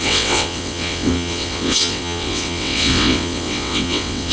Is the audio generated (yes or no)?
yes